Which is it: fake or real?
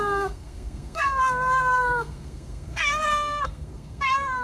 fake